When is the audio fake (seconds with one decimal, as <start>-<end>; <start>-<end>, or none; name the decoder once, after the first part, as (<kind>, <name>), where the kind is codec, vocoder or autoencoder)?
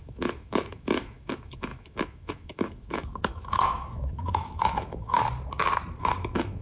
0.0-5.2 (autoencoder, DAC-VAE); 6.0-6.6